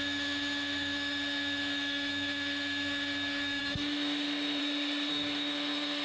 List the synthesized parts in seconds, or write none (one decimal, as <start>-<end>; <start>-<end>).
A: 0.0-4.6; 5.1-6.0